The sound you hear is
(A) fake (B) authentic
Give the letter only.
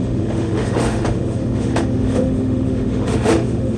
A